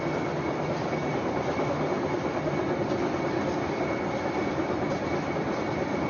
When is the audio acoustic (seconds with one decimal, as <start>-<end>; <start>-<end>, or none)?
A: 0.0-6.1